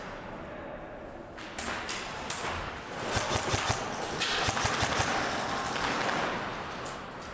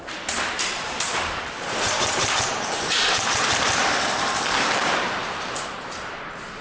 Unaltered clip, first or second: first